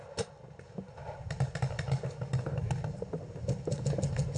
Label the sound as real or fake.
real